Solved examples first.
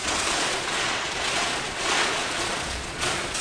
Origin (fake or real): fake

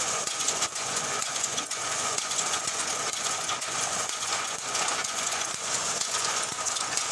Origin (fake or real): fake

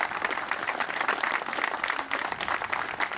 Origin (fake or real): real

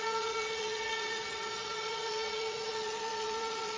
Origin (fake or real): fake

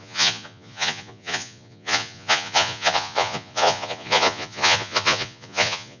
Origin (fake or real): fake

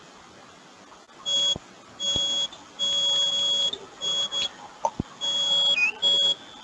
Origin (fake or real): real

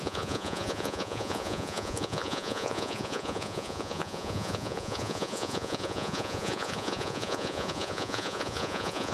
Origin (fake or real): fake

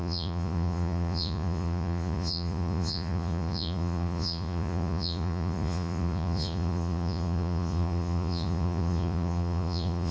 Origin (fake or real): fake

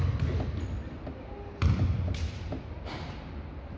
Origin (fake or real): real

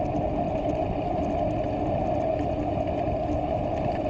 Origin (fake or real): real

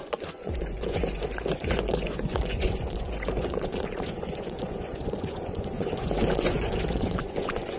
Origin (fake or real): fake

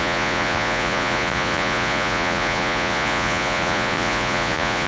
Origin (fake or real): fake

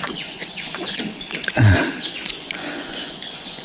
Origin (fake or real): fake